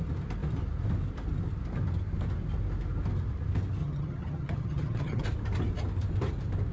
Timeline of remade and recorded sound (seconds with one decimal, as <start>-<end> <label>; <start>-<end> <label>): 0.0-3.8 recorded; 3.8-5.2 remade; 5.2-6.7 recorded